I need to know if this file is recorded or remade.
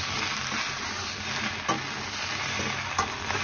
recorded